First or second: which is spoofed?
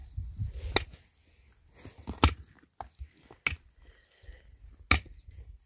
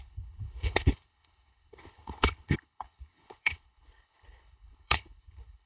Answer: second